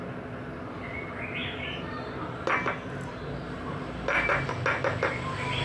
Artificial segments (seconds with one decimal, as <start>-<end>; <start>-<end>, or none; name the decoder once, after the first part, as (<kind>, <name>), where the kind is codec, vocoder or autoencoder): none